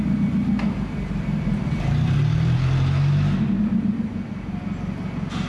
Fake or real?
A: real